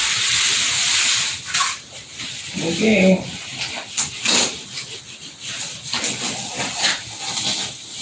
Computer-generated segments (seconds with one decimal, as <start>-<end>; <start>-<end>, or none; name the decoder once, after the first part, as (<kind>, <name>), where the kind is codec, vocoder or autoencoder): none